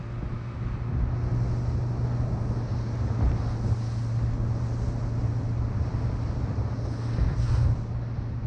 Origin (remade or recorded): recorded